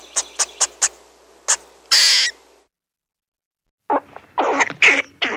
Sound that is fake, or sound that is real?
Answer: real